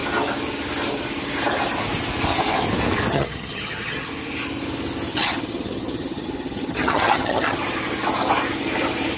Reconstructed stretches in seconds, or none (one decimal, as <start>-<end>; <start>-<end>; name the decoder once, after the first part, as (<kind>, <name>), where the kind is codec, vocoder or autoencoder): 3.1-4.1 (vocoder, HiFi-GAN); 5.1-7.6